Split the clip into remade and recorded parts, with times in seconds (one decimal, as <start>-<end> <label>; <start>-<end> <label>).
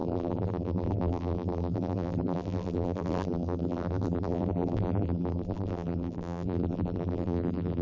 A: 0.0-7.8 remade